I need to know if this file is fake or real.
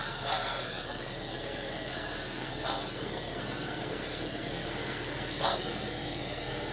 fake